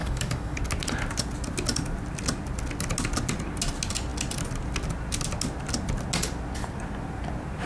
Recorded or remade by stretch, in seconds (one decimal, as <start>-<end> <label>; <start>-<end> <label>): 0.0-0.6 remade; 0.6-7.7 recorded